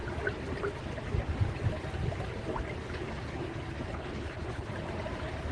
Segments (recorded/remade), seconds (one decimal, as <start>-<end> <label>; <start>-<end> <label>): 0.0-3.9 recorded; 3.9-4.7 remade; 4.7-5.5 recorded